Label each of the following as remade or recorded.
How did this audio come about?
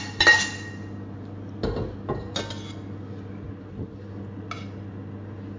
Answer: recorded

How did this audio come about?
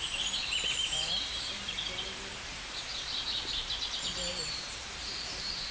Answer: remade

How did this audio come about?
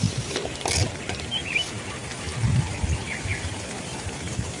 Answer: remade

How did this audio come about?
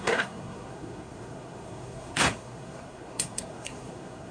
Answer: remade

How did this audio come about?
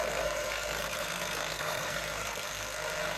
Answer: remade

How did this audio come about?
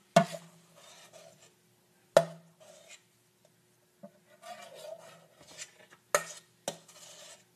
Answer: recorded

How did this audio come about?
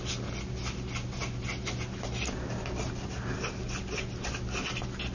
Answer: recorded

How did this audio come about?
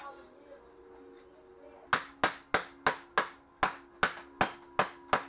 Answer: recorded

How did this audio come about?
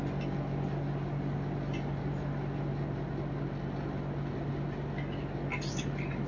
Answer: recorded